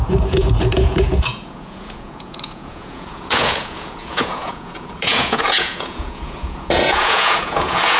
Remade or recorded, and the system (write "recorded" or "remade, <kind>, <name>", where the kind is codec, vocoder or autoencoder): remade, vocoder, Vocos